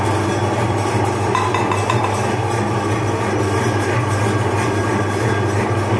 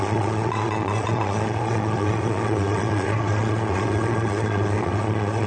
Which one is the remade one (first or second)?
second